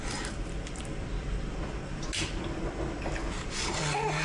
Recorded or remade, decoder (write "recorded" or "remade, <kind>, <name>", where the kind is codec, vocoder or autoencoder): recorded